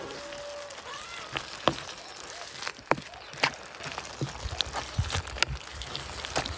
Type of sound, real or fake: real